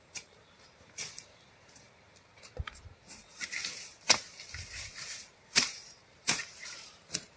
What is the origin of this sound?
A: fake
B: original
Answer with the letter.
A